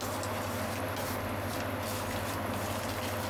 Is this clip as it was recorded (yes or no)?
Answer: yes